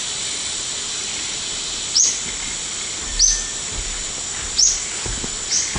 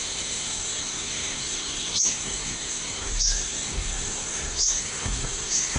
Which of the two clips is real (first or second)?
first